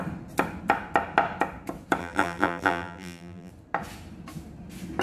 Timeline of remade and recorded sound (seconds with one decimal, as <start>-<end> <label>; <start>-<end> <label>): 0.0-2.0 recorded; 2.0-3.5 remade; 3.5-5.0 recorded